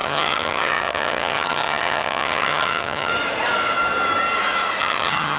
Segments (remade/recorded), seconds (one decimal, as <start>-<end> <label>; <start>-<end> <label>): 0.0-3.1 remade; 3.1-4.8 recorded; 4.8-5.4 remade